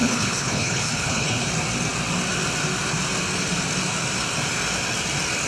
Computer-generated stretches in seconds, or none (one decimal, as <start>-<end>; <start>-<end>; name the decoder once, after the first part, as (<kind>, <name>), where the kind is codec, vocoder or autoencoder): 0.0-1.5 (codec, HILCodec)